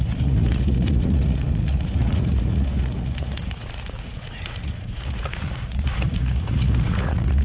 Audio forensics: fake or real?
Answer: fake